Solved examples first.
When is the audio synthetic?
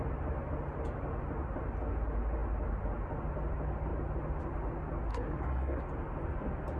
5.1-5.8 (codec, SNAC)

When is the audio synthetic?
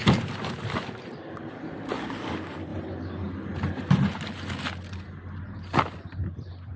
none